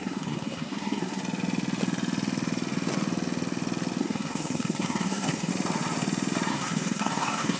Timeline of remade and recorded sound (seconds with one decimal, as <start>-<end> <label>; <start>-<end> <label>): 0.0-1.2 remade; 1.2-4.0 recorded; 4.0-5.5 remade; 5.5-6.5 recorded; 6.5-7.6 remade

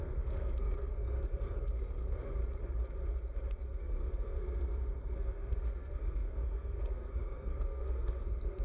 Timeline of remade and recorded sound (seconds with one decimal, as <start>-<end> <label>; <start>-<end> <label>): 0.0-2.4 remade; 2.4-3.8 recorded; 3.8-8.6 remade

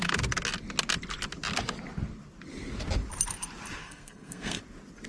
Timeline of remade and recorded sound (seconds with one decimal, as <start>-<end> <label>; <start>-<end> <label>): 0.0-3.8 recorded; 3.8-4.6 remade; 4.6-5.1 recorded

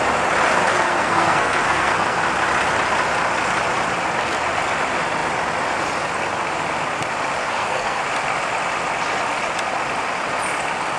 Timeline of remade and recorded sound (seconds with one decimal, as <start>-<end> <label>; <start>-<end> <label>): 0.0-0.7 recorded; 0.7-2.2 remade; 2.2-7.4 recorded; 7.4-8.0 remade; 8.0-11.0 recorded

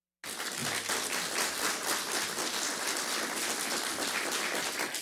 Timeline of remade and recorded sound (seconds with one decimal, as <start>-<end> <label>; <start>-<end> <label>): 0.0-5.0 recorded

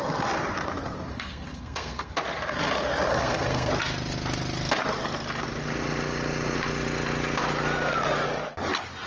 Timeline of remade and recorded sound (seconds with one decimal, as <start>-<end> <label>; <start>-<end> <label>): 0.0-1.1 recorded; 1.1-2.1 remade; 2.1-3.1 recorded; 3.1-3.7 remade; 3.7-9.1 recorded

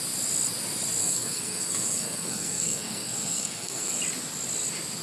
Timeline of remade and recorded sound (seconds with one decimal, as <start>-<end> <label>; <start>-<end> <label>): 0.0-1.0 recorded; 1.0-4.0 remade; 4.0-5.0 recorded